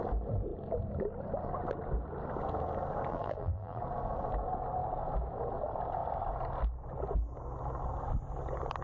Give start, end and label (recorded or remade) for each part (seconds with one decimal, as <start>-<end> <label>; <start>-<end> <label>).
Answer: 0.0-3.1 recorded; 3.1-3.8 remade; 3.8-8.8 recorded